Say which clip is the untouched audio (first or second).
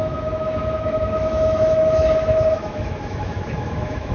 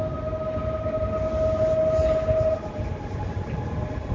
second